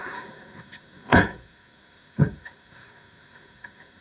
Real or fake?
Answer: fake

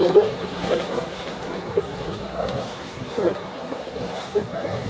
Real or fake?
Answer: fake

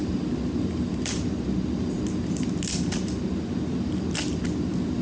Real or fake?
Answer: real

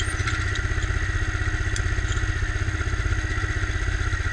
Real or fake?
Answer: real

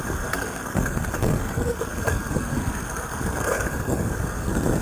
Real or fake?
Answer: fake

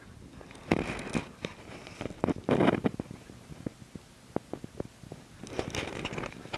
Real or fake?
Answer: real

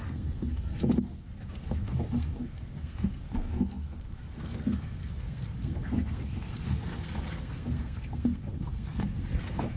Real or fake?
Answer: fake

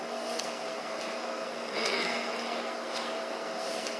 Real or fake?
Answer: fake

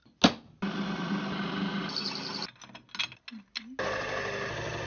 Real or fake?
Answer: real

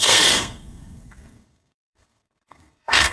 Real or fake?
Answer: fake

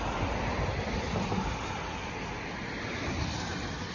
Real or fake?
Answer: real